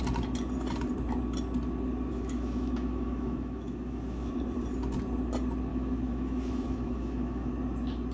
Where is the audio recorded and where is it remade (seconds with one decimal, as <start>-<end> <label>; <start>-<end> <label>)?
0.0-2.1 recorded; 2.1-4.3 remade; 4.3-5.7 recorded; 5.7-7.5 remade; 7.5-8.1 recorded

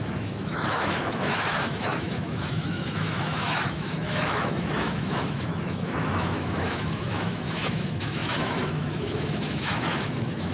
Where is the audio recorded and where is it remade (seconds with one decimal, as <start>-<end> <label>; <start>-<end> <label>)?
0.0-10.5 remade

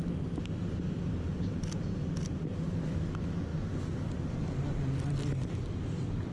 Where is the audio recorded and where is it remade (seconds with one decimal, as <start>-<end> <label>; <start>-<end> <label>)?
0.0-6.3 recorded